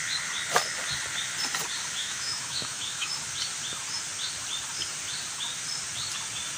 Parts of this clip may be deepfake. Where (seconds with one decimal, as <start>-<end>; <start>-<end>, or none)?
2.0-3.1